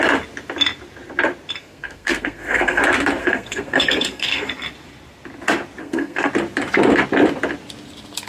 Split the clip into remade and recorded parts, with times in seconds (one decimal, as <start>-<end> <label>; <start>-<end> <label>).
0.0-1.6 recorded; 1.6-2.8 remade; 2.8-3.2 recorded; 3.2-4.5 remade; 4.5-5.8 recorded; 5.8-6.3 remade; 6.3-8.3 recorded